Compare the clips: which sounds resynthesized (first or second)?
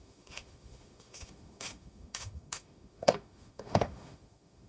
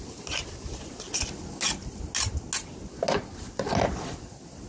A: first